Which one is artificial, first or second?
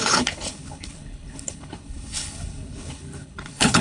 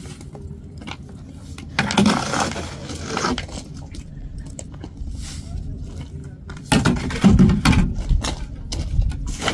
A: first